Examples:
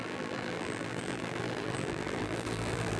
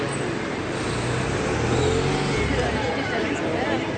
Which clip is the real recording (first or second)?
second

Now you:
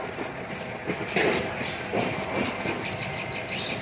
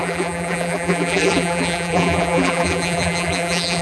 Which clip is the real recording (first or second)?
first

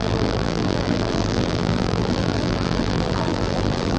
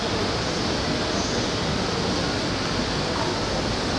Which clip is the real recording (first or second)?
second